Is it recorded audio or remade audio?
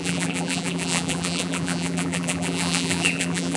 remade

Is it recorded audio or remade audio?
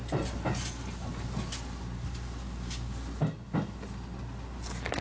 recorded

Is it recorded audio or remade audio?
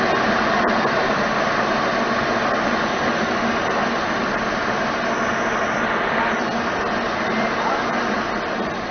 recorded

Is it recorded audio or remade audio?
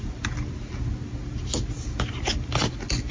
recorded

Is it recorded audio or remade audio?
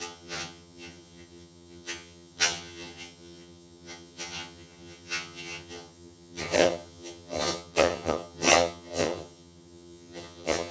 remade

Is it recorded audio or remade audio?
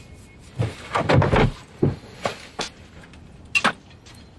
recorded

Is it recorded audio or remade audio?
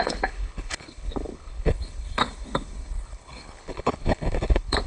remade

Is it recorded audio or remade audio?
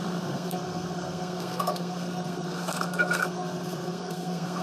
remade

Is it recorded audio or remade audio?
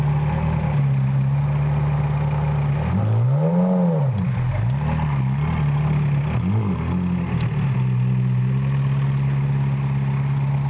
recorded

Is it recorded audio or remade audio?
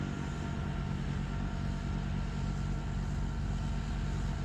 recorded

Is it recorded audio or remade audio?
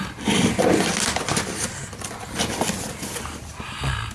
recorded